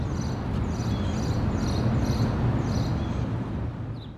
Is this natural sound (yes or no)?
yes